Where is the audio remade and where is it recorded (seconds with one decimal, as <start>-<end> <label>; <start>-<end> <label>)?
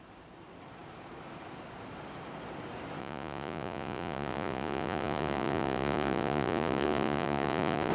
0.0-3.0 recorded; 3.0-7.9 remade